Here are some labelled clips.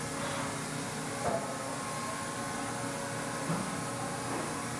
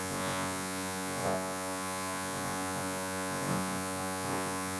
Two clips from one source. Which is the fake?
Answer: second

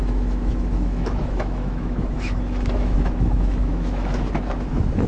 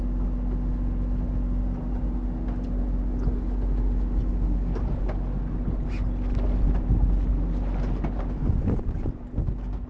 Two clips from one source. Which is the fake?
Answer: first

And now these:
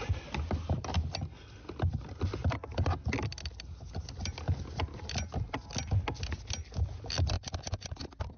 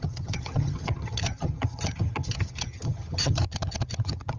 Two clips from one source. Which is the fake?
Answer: second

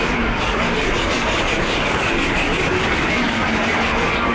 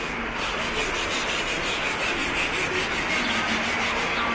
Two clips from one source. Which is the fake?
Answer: first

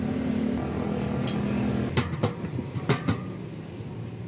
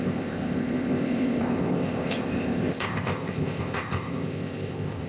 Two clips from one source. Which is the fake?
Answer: second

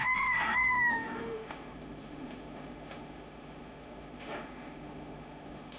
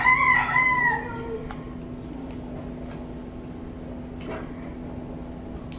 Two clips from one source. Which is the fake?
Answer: first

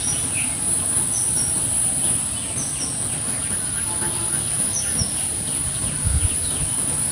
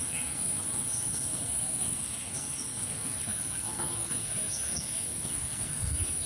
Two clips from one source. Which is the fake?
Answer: second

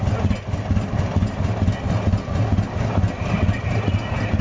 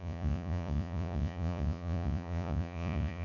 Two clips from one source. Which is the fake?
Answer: second